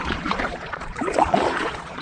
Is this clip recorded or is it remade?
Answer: remade